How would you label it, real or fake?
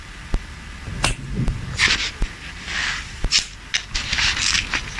real